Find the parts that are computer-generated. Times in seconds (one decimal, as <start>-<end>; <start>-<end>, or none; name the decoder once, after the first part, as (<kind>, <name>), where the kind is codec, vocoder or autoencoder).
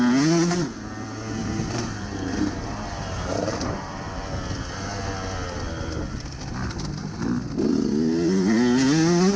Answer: 1.4-4.2 (vocoder, BigVGAN v2)